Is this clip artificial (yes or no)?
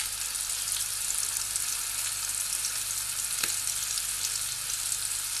no